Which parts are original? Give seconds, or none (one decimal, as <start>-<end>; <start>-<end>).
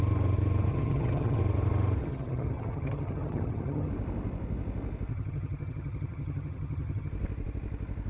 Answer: 0.0-0.7; 1.4-2.0; 3.9-5.1; 7.1-8.1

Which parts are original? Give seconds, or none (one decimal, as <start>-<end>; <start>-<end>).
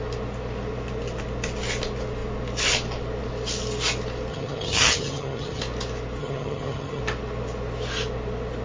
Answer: 0.0-4.3; 5.6-6.2; 7.0-8.6